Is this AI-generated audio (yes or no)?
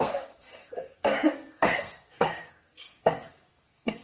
yes